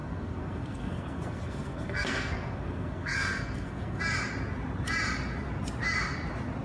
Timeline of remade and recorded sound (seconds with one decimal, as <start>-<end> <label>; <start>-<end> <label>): 0.0-4.0 remade; 4.0-6.6 recorded